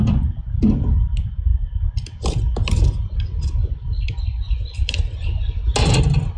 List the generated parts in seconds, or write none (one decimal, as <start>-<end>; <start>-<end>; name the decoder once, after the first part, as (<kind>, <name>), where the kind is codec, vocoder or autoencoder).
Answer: none